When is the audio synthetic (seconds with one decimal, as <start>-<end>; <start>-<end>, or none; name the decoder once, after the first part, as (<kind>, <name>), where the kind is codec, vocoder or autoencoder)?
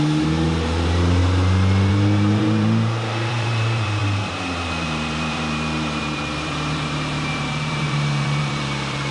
0.0-1.2 (vocoder, BigVGAN v2); 1.9-9.1